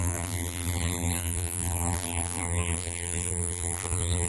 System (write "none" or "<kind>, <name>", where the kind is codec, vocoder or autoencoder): vocoder, BigVGAN v2